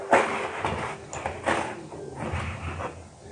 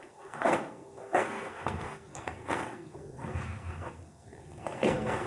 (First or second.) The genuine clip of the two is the first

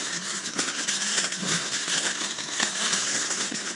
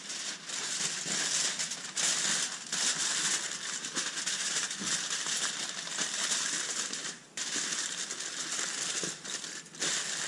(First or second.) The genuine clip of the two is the second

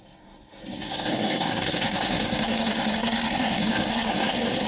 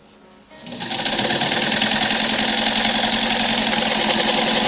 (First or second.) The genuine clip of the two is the second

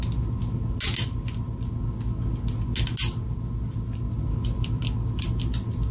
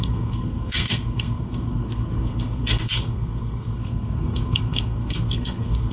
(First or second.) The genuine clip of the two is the first